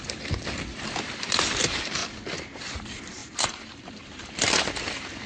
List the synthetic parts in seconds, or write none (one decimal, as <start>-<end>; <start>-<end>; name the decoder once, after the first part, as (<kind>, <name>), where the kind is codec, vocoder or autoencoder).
3.2-4.3 (vocoder, BigVGAN v2)